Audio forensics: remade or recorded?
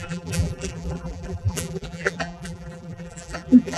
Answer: remade